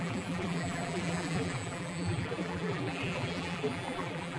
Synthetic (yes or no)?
yes